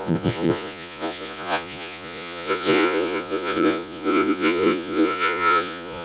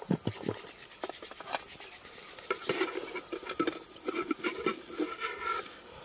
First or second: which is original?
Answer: second